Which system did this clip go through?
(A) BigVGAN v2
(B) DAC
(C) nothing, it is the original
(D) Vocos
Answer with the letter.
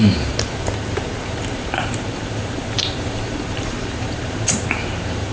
A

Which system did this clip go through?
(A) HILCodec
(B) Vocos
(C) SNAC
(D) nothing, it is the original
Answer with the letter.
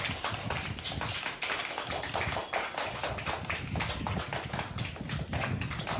D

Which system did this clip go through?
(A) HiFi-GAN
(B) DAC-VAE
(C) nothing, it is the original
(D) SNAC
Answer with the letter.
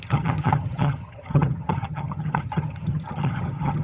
A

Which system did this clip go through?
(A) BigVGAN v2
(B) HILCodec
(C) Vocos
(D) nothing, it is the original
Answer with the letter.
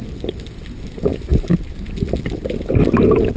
D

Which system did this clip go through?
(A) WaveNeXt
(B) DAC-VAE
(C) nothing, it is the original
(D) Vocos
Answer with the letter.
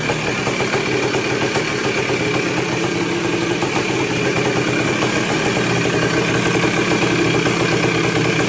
C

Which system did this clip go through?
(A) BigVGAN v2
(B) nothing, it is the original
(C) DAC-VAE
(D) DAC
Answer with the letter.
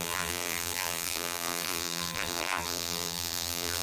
A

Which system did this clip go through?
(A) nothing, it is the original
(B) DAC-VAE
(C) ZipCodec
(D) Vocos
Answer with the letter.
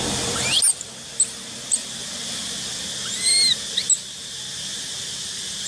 A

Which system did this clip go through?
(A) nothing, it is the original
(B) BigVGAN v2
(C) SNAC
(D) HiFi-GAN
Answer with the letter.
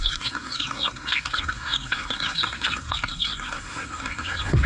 C